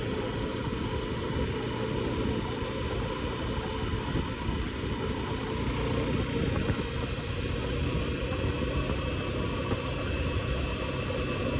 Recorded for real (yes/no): yes